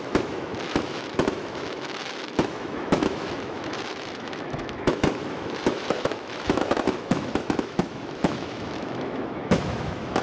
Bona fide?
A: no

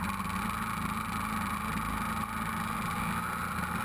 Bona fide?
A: yes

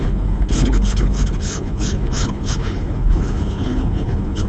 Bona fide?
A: no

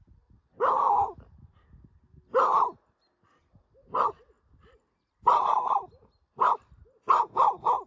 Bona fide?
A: yes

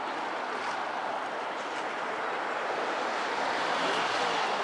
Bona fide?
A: yes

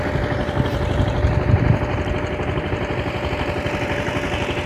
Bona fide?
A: yes